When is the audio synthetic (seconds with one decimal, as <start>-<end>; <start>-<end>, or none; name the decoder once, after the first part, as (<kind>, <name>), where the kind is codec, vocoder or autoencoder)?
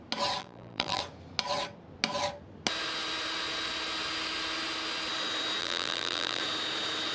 0.4-1.0 (vocoder, BigVGAN v2); 5.6-6.4